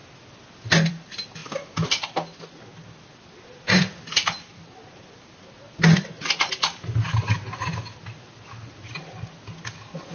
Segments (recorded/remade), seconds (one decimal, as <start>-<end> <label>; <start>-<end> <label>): 0.0-10.1 recorded